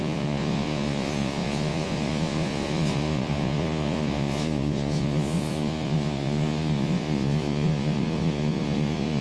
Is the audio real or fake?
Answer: fake